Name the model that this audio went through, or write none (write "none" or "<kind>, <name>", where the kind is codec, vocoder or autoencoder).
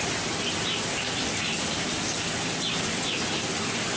none